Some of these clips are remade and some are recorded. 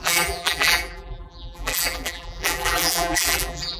remade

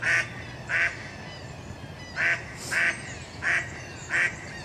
recorded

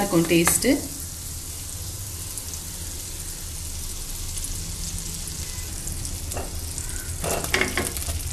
recorded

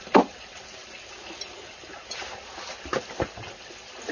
recorded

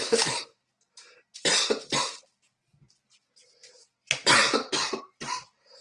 remade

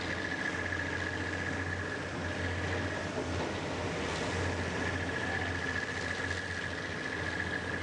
recorded